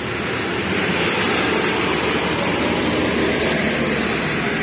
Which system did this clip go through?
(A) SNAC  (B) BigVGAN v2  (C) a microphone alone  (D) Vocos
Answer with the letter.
C